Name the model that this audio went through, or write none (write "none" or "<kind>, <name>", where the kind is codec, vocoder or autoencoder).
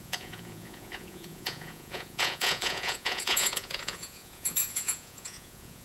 vocoder, Vocos